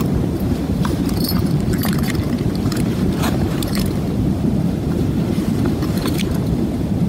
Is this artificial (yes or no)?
yes